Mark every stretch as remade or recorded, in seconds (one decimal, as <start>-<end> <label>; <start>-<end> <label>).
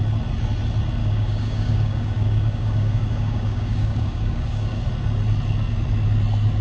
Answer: 0.0-1.0 recorded; 1.0-4.8 remade; 4.8-6.6 recorded